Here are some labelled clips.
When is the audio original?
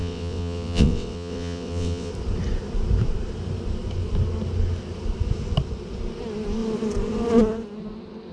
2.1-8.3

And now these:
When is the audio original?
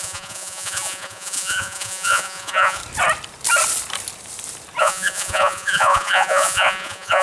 2.8-4.8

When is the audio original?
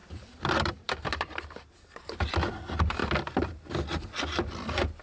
2.2-5.0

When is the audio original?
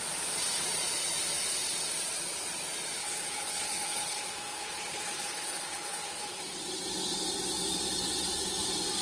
0.0-3.0; 6.4-9.0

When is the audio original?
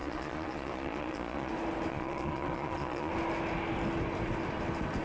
1.5-1.9; 3.1-5.0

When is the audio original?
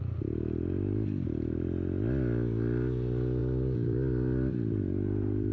0.0-3.4; 4.8-5.5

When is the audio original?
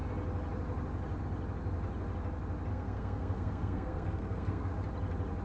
0.0-2.7; 4.7-5.4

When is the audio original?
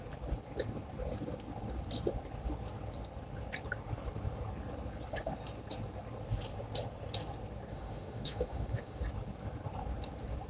0.0-7.7; 9.0-10.5